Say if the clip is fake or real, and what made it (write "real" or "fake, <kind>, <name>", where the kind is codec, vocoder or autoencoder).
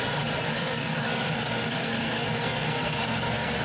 fake, codec, SNAC